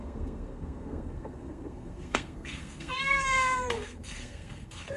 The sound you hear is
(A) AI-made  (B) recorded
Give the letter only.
A